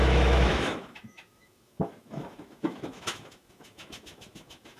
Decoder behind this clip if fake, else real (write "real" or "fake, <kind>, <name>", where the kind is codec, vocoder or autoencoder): fake, autoencoder, DAC-VAE